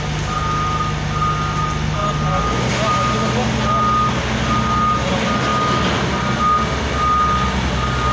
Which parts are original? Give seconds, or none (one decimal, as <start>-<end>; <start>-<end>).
0.0-8.1